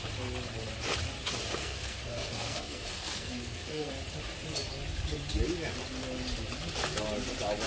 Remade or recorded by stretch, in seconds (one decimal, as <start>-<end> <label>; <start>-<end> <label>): 0.0-1.6 recorded; 1.6-3.9 remade; 3.9-7.7 recorded